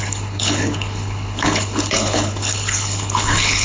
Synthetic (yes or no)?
yes